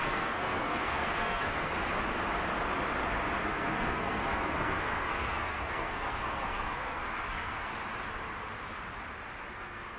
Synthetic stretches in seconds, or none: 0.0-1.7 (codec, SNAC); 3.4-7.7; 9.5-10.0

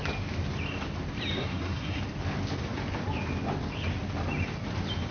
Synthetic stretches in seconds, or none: 1.4-2.0 (codec, SNAC)